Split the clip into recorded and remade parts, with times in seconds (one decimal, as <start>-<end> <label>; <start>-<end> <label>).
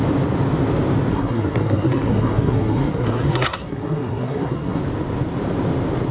0.0-1.1 recorded; 1.1-4.8 remade; 4.8-6.1 recorded